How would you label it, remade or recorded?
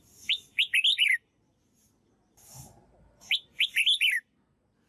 recorded